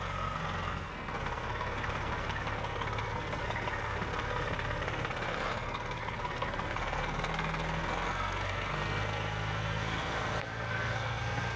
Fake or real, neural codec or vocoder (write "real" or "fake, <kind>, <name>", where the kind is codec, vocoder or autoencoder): fake, codec, SNAC